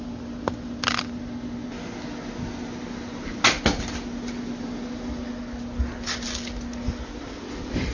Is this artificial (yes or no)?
no